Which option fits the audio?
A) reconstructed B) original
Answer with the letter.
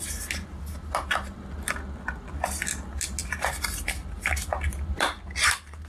B